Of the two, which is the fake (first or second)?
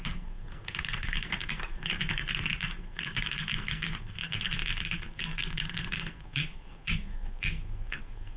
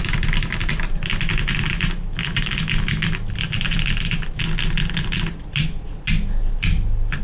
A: first